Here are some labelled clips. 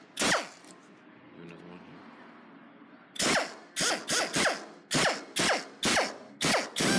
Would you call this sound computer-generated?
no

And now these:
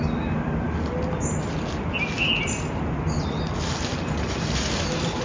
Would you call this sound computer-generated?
no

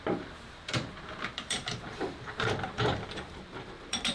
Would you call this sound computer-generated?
yes